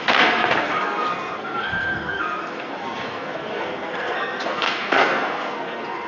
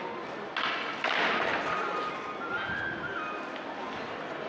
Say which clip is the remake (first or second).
first